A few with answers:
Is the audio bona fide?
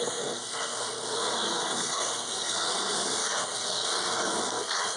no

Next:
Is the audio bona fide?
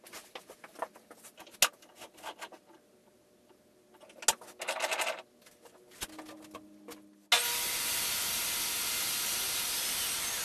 yes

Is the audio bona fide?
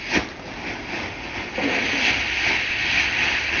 yes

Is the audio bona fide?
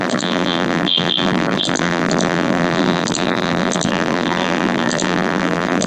no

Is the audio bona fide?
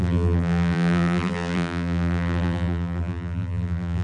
no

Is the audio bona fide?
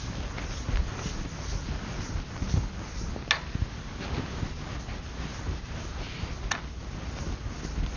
yes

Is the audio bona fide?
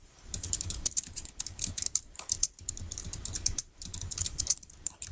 no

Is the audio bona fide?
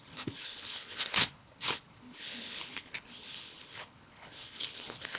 no